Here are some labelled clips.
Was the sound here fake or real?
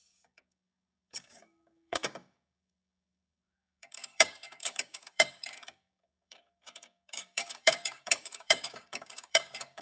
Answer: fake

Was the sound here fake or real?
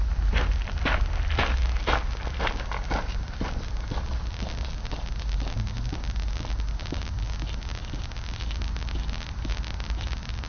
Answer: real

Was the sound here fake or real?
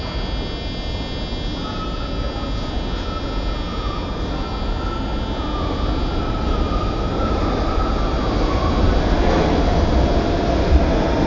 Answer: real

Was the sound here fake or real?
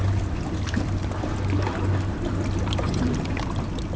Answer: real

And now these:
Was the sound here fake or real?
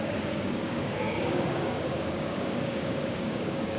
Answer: fake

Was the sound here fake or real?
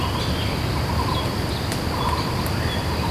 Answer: real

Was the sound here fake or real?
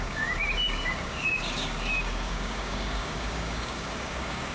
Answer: fake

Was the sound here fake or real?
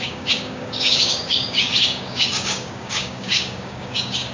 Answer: fake